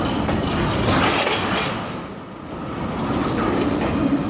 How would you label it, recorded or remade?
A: recorded